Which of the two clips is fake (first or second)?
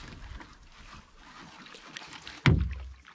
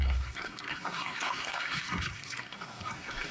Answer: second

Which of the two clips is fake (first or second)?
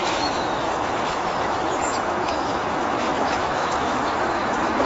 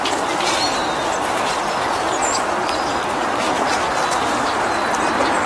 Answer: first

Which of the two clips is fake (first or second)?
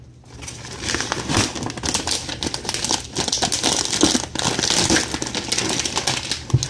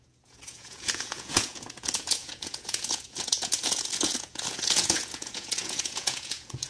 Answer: second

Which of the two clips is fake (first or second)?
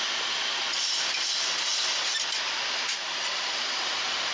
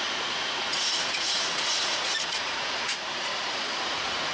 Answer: second